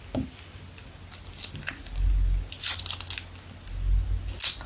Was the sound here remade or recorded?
recorded